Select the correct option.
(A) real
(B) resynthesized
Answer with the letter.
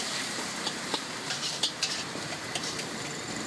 B